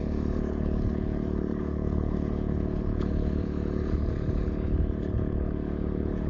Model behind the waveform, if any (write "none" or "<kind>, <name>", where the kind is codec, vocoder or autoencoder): codec, HILCodec